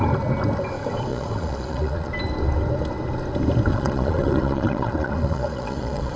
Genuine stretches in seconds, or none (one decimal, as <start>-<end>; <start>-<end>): 0.0-1.1; 2.1-3.7